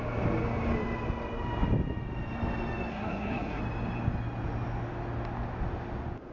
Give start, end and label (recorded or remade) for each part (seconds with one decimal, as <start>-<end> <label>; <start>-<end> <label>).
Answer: 0.0-2.9 recorded; 2.9-3.6 remade; 3.6-6.3 recorded